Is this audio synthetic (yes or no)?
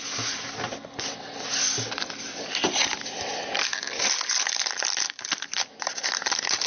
no